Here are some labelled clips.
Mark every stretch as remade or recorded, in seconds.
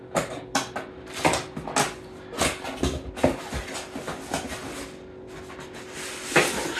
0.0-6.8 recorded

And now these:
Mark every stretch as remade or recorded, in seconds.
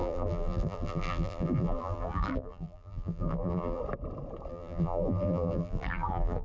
0.0-3.8 remade; 3.8-4.5 recorded; 4.5-6.4 remade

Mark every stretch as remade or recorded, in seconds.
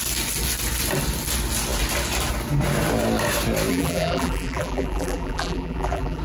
0.0-3.7 recorded; 3.7-6.2 remade